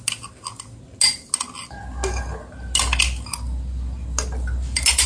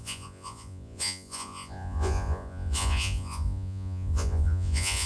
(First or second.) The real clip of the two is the first